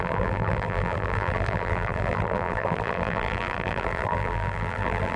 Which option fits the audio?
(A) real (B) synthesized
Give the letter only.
B